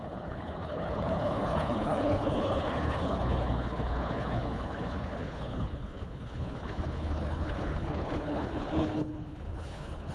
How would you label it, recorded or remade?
remade